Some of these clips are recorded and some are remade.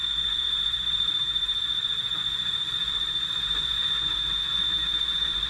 remade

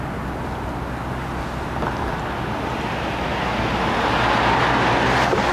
recorded